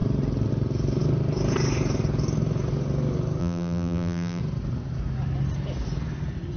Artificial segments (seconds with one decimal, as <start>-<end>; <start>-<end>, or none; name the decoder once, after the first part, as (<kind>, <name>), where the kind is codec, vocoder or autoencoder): 3.4-4.4 (vocoder, BigVGAN v2)